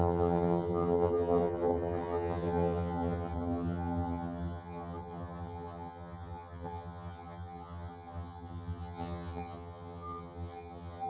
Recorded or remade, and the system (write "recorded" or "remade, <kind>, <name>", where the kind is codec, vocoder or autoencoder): remade, vocoder, HiFi-GAN